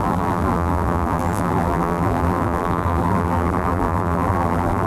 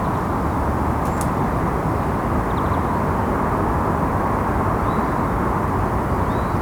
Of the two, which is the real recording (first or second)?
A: second